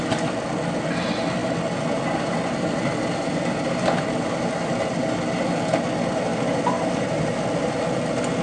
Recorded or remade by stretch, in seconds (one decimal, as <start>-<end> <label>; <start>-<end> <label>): 0.0-8.4 recorded